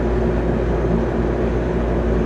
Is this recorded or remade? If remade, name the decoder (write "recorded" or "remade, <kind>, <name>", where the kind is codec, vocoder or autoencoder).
recorded